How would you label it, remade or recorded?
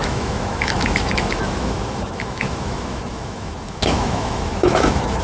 remade